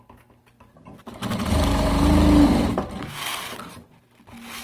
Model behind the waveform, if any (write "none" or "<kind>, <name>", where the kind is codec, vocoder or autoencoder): none